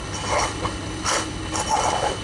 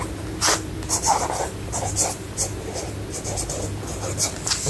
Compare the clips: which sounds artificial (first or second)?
first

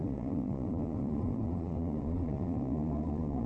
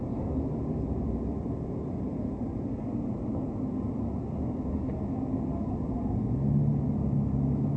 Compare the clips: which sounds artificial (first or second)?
first